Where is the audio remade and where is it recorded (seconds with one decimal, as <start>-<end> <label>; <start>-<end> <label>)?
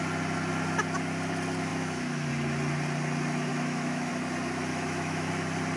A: 0.0-1.7 recorded; 1.7-2.3 remade; 2.3-3.5 recorded; 3.5-4.1 remade; 4.1-4.7 recorded; 4.7-5.3 remade; 5.3-5.8 recorded